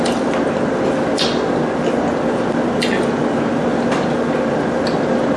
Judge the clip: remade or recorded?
recorded